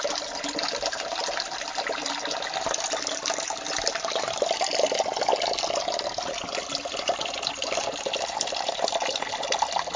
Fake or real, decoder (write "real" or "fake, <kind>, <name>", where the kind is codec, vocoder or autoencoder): real